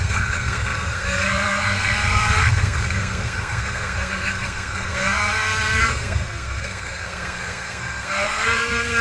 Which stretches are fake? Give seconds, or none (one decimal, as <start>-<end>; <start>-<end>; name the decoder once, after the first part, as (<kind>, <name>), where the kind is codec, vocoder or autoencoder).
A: 0.0-9.0 (codec, SNAC)